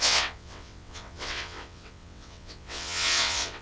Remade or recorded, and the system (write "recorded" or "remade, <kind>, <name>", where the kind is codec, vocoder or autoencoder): remade, vocoder, WaveNeXt